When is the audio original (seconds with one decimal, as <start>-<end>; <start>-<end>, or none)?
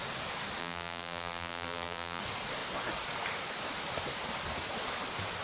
0.0-0.6; 2.2-5.4